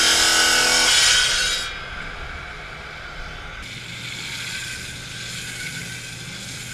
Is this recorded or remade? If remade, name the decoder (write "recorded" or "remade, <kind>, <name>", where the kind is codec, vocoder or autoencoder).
recorded